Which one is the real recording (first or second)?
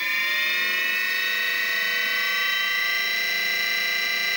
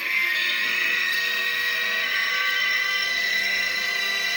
first